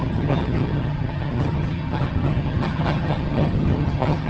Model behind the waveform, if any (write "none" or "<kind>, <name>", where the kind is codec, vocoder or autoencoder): vocoder, HiFi-GAN